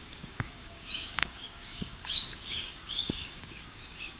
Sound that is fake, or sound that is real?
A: fake